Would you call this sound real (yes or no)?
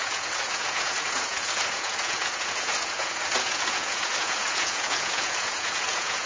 no